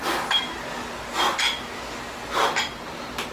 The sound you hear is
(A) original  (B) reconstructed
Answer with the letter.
A